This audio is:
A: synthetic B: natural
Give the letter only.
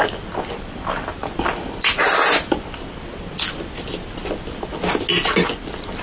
B